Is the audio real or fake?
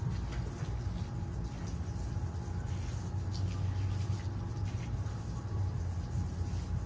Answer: real